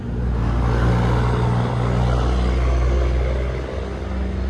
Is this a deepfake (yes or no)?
no